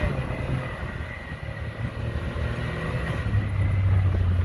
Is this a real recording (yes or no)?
yes